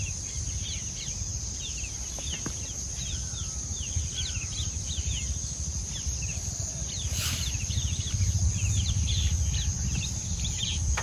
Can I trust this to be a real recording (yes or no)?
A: yes